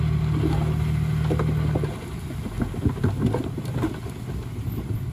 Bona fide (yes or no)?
yes